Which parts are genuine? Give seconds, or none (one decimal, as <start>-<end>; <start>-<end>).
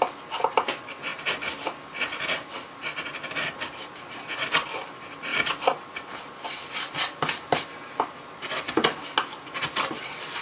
0.0-10.4